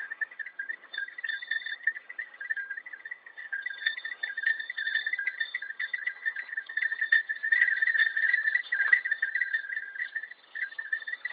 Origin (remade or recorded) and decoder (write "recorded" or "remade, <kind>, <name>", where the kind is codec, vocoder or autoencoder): remade, vocoder, HiFi-GAN